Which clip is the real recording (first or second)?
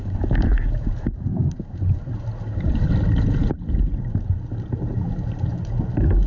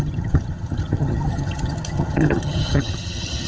first